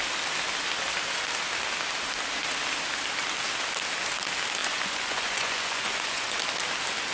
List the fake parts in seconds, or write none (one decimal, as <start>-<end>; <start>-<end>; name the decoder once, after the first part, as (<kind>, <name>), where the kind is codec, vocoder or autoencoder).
4.6-6.4 (vocoder, Vocos)